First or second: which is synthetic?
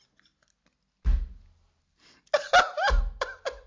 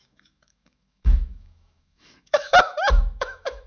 second